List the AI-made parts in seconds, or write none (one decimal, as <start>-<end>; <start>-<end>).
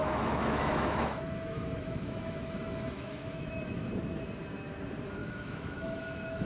0.0-3.9; 5.2-6.5